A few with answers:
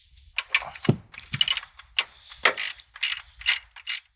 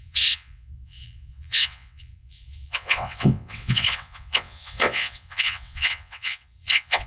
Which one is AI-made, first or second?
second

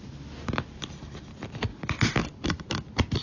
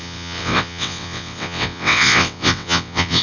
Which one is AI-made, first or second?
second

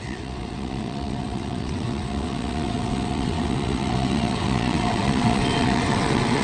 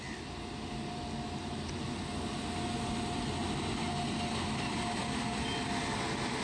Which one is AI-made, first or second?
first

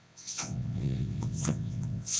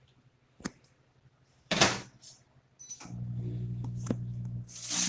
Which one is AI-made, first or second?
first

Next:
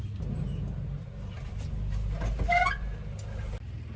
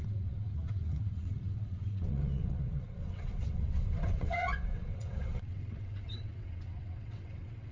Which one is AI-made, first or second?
second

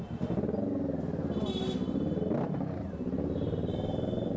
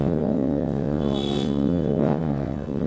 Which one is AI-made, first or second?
second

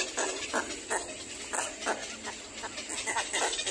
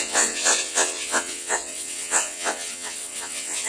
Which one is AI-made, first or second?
second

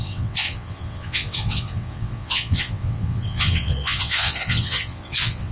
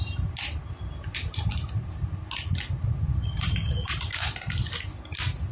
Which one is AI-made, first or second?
first